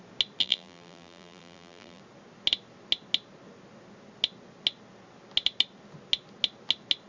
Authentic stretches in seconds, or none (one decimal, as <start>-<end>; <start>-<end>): 0.0-0.4; 2.0-7.1